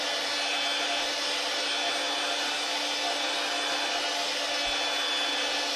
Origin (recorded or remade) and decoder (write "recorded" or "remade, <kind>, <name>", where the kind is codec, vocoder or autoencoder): recorded